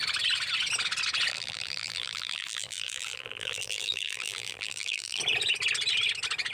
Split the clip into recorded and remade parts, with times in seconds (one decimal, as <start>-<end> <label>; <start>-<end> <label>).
0.0-1.3 recorded; 1.3-5.2 remade; 5.2-6.5 recorded